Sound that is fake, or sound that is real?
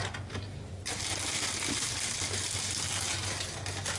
real